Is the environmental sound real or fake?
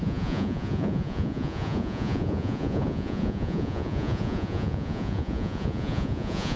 fake